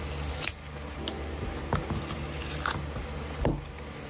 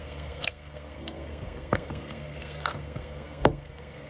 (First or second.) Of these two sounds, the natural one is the first